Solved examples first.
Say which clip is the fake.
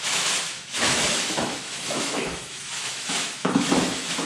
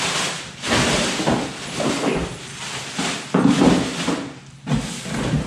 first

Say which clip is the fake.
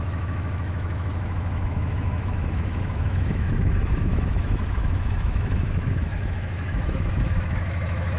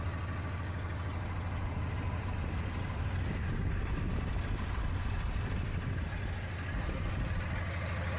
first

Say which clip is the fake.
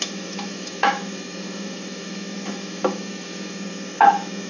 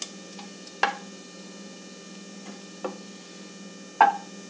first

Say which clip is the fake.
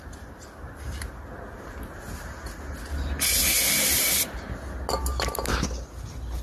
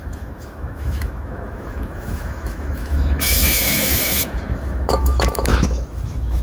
second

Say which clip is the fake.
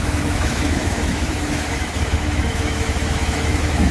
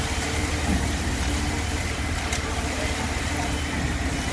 first